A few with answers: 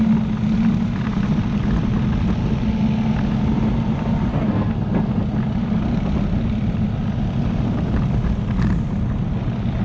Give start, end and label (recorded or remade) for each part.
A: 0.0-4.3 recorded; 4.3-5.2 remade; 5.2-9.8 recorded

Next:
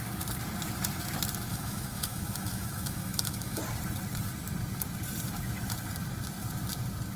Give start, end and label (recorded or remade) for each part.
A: 0.0-1.5 recorded; 1.5-3.6 remade; 3.6-7.2 recorded